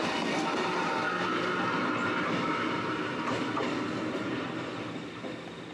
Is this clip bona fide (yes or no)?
yes